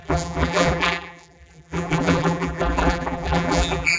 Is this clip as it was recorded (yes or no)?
no